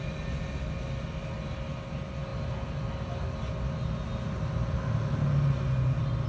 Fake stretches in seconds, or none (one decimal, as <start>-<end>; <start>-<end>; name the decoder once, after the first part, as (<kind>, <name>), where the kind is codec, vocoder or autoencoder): none